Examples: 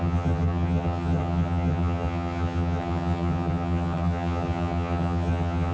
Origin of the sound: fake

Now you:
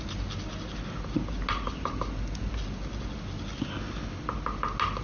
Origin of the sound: real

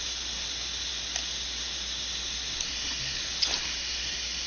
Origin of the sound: real